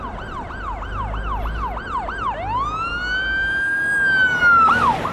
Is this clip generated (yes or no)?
no